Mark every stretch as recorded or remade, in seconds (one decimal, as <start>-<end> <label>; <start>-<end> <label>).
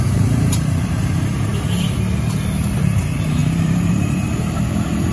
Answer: 0.0-1.5 remade; 1.5-2.8 recorded; 2.8-5.1 remade